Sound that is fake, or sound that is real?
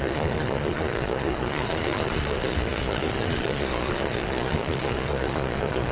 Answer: fake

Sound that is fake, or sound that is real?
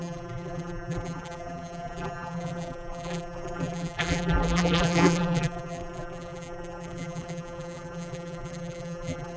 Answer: fake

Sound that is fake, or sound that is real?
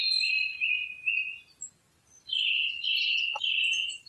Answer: real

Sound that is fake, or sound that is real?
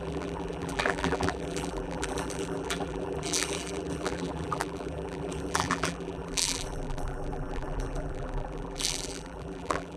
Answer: fake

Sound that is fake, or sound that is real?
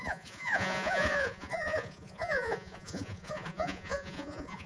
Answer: fake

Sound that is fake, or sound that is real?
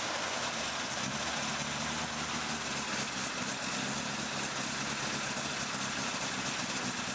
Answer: real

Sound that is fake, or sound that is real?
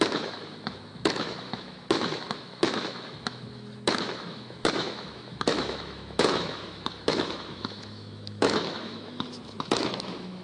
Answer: fake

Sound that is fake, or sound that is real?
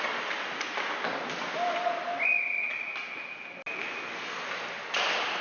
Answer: real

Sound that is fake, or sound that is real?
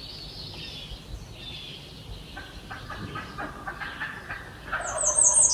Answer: real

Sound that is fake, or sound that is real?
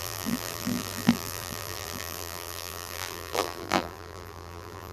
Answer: fake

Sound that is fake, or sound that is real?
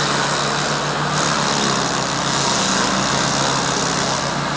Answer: real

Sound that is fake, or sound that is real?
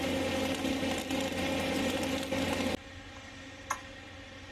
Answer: real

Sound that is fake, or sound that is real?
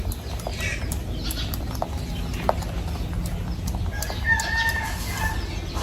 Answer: real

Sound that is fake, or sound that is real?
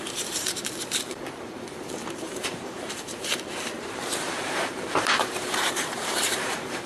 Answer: fake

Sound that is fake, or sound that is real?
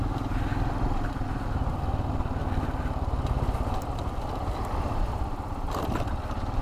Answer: real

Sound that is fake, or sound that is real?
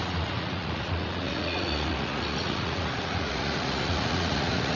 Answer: fake